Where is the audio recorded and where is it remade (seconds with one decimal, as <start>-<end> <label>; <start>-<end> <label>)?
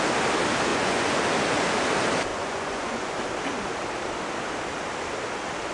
0.0-0.7 recorded; 0.7-1.2 remade; 1.2-2.3 recorded; 2.3-3.1 remade; 3.1-5.7 recorded